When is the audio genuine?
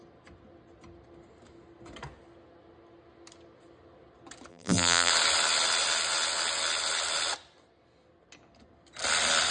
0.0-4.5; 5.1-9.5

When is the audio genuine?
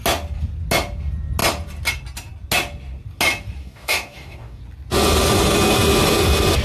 0.0-3.6; 4.6-6.6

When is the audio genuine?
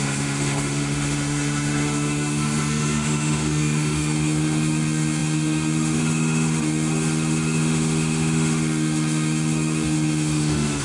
none